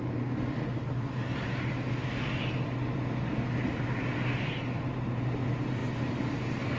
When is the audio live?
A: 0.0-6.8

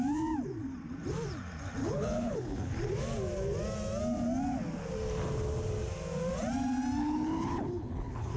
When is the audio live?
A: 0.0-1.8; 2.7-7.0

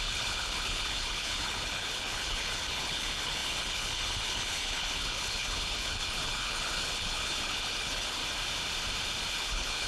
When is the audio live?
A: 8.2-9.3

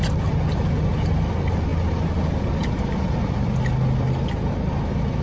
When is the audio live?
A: 0.0-5.2

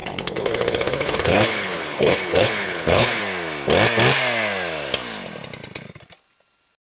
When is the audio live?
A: 3.2-6.8

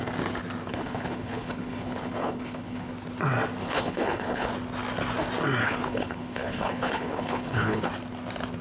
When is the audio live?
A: 0.0-0.7; 2.9-3.6; 4.5-5.6; 7.9-8.6